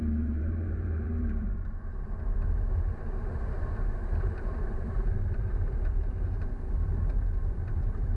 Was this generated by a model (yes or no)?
yes